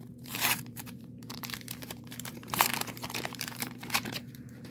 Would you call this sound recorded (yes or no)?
no